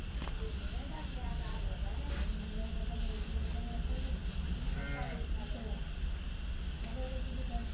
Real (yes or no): yes